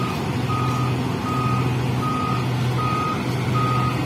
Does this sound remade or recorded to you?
recorded